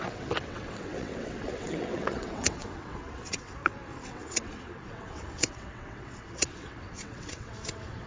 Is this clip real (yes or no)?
no